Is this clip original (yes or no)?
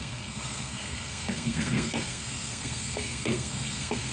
no